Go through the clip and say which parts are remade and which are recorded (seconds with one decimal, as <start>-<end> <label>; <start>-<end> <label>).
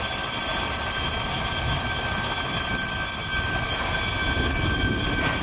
0.0-5.4 recorded